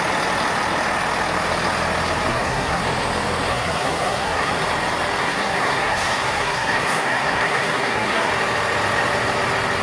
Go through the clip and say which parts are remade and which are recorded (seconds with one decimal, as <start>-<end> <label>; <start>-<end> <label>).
0.0-2.3 recorded; 2.3-2.8 remade; 2.8-3.5 recorded; 3.5-4.5 remade; 4.5-5.2 recorded; 5.2-8.3 remade; 8.3-9.8 recorded